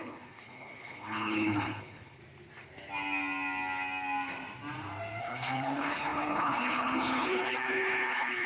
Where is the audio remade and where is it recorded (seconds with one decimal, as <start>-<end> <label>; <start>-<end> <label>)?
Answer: 0.0-2.2 remade; 2.2-5.2 recorded; 5.2-8.5 remade